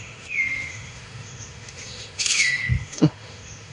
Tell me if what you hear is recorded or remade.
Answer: remade